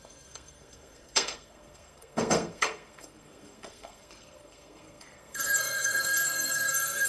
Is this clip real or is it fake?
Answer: fake